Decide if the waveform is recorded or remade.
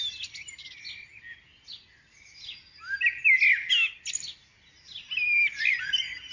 recorded